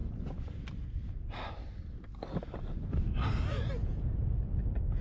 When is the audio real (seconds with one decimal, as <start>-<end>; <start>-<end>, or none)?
0.0-3.8; 4.4-5.0